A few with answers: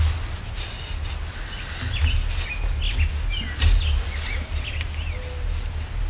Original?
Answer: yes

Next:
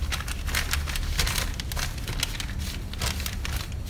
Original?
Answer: yes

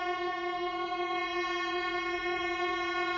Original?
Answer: no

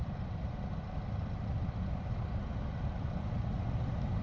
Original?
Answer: yes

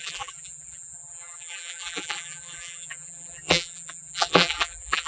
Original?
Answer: no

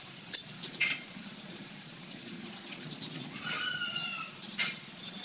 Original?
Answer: no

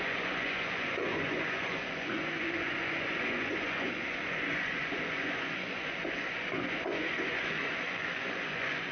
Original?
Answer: no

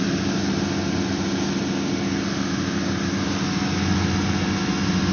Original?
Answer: yes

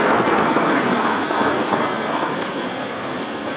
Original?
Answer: no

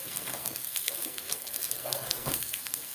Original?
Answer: no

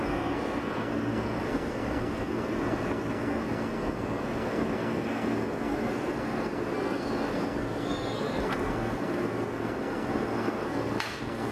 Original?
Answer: no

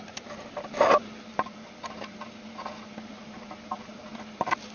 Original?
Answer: yes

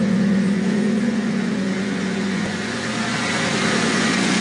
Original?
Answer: no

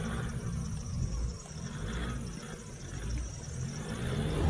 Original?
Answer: yes